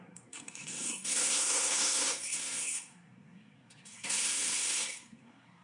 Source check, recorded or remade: remade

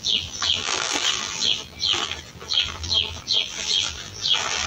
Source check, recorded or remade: remade